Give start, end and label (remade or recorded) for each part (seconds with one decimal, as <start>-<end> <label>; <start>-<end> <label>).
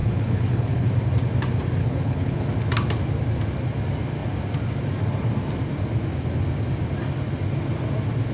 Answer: 0.0-0.9 remade; 0.9-1.8 recorded; 1.8-2.5 remade; 2.5-8.3 recorded